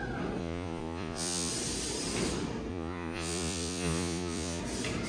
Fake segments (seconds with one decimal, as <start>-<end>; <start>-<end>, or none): 0.4-1.5; 2.7-4.6